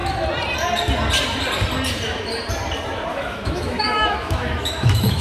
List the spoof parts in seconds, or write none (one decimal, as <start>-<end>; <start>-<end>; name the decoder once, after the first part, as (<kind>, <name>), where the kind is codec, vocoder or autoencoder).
3.1-5.2 (autoencoder, DAC-VAE)